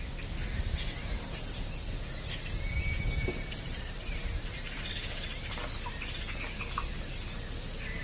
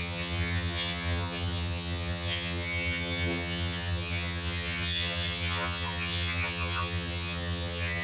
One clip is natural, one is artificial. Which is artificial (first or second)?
second